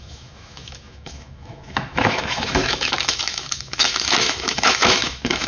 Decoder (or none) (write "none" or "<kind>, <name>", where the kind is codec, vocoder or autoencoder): autoencoder, DAC-VAE